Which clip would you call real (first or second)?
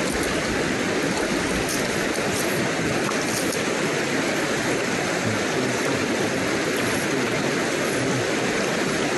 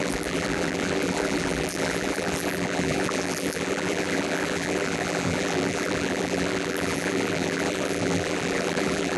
first